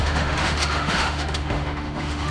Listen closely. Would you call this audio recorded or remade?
remade